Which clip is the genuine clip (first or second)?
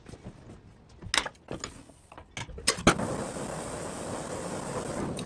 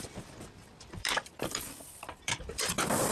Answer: first